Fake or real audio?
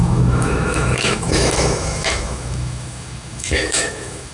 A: fake